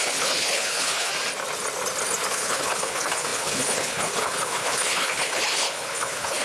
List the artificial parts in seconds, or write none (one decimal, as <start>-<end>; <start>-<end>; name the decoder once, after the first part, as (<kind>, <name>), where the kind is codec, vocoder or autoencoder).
0.0-1.1 (codec, HILCodec); 2.3-6.4